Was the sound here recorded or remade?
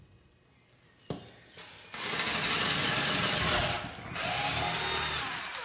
recorded